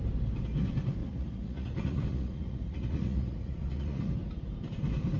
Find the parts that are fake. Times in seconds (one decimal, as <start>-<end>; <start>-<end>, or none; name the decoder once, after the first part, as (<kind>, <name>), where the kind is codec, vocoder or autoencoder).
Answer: 1.0-4.1 (vocoder, Vocos)